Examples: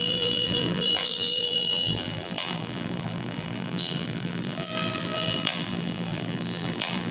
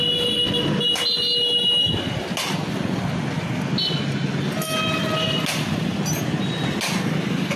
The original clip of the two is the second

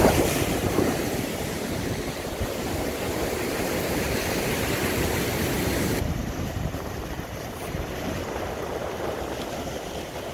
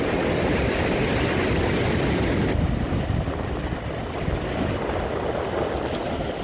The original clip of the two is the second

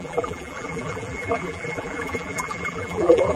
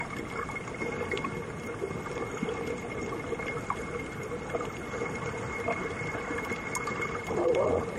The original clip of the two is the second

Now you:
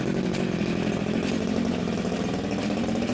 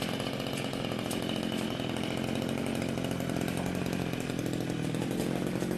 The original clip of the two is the second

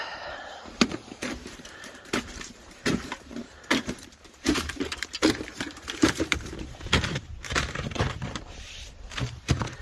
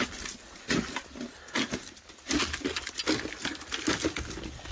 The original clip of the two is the second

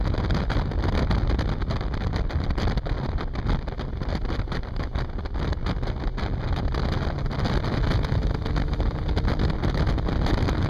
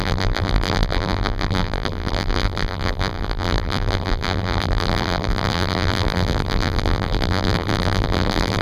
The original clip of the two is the first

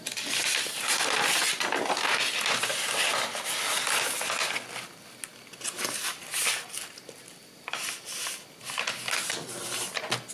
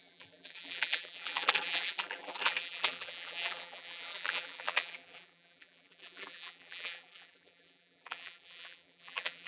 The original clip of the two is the first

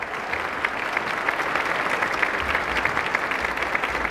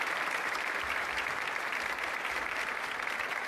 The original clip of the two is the first